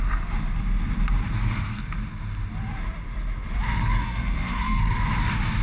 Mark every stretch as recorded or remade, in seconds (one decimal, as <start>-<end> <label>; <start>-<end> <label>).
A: 0.0-1.4 recorded; 1.4-1.9 remade; 1.9-3.8 recorded; 3.8-5.0 remade; 5.0-5.6 recorded